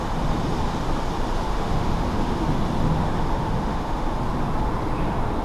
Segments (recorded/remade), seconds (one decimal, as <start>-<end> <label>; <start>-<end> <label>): 0.0-1.4 recorded; 1.4-2.4 remade; 2.4-3.0 recorded; 3.0-4.2 remade; 4.2-5.4 recorded

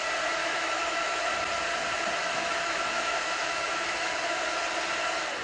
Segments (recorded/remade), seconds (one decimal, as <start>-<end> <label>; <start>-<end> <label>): 0.0-0.4 recorded; 0.4-1.2 remade; 1.2-2.2 recorded; 2.2-4.4 remade; 4.4-5.4 recorded

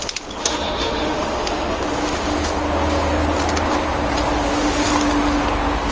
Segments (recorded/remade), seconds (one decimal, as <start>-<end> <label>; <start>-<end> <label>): 0.0-0.4 recorded; 0.4-1.8 remade; 1.8-5.9 recorded

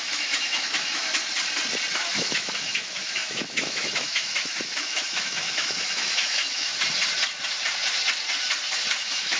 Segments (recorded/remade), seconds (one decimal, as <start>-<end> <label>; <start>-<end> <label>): 0.0-1.2 remade; 1.2-1.9 recorded; 1.9-6.7 remade; 6.7-8.9 recorded; 8.9-9.4 remade

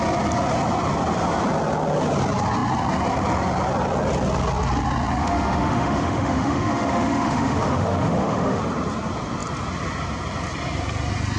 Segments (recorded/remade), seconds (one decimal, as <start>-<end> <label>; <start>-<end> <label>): 0.0-5.2 recorded; 5.2-8.6 remade; 8.6-11.4 recorded

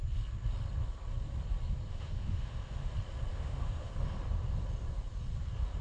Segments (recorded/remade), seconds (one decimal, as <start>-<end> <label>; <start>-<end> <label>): 0.0-1.9 recorded; 1.9-2.9 remade; 2.9-3.3 recorded; 3.3-3.9 remade; 3.9-5.8 recorded

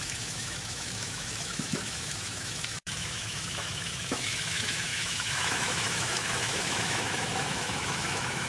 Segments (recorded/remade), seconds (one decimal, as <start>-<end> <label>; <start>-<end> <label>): 0.0-8.5 remade